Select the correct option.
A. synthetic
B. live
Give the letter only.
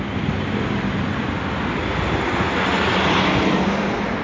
B